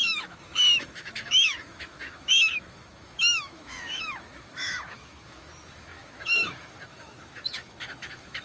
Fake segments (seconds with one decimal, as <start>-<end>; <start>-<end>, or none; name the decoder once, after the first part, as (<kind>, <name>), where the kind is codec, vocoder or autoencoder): 0.0-8.4 (autoencoder, DAC-VAE)